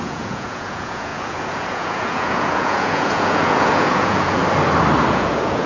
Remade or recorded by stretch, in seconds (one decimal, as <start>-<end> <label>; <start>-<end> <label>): 0.0-4.4 remade; 4.4-5.1 recorded; 5.1-5.7 remade